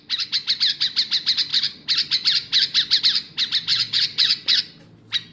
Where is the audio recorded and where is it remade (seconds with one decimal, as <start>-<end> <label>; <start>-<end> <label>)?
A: 0.0-3.7 recorded; 3.7-4.6 remade; 4.6-5.3 recorded